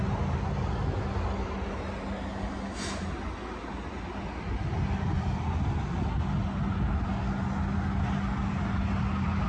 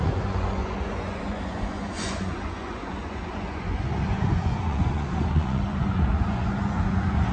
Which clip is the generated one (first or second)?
second